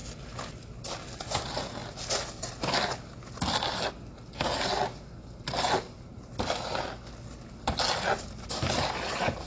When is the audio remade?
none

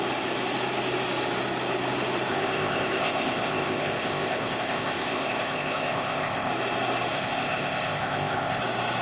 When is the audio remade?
2.3-6.5 (codec, ZipCodec); 7.1-8.6

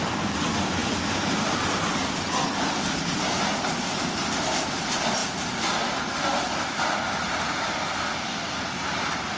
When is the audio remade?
none